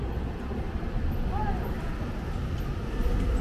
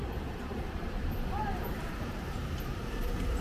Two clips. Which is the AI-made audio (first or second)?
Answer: second